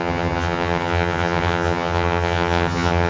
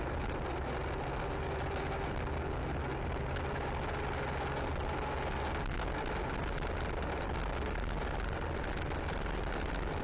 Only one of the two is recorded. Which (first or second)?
second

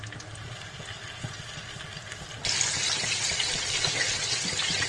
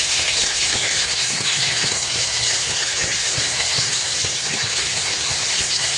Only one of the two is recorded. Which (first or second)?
first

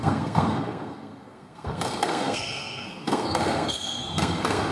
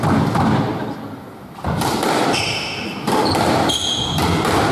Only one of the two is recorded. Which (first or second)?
second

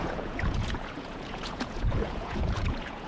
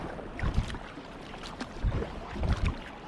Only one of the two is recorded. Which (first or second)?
second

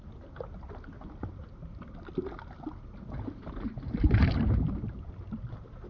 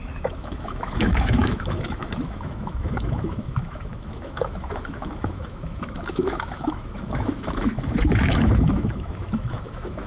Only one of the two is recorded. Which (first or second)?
first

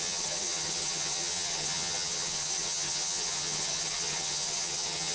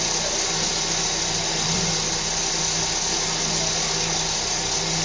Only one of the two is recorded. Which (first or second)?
second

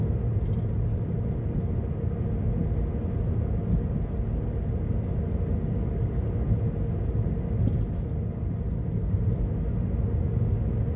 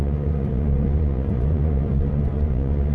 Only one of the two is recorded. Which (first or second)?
first